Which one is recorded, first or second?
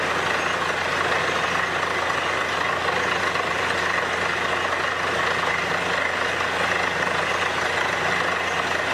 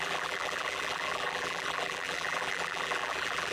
first